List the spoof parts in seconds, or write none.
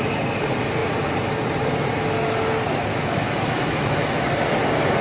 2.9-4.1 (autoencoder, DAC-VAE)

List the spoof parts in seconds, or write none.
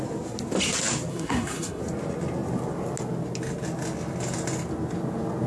1.1-1.8 (codec, SNAC)